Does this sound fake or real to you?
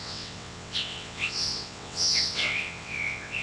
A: fake